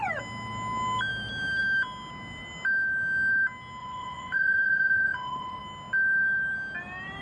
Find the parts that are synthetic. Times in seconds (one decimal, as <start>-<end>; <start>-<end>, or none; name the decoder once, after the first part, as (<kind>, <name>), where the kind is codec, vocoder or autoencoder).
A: 3.8-5.6 (vocoder, Vocos)

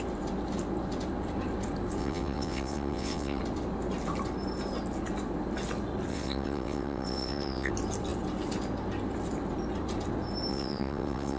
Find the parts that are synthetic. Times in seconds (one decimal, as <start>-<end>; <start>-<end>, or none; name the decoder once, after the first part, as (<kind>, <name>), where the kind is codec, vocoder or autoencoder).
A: 2.0-3.4 (vocoder, WaveNeXt); 6.1-7.7; 10.5-11.4

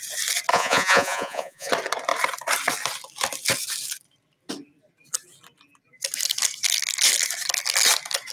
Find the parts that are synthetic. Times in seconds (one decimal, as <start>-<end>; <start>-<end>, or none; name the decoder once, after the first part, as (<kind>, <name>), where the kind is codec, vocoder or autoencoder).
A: 0.5-1.7 (vocoder, Vocos)

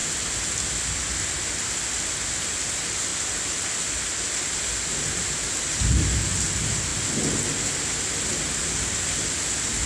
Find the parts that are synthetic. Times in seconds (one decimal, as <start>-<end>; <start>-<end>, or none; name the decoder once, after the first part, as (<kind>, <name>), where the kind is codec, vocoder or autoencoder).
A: none